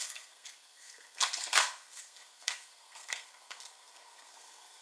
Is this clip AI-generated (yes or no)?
yes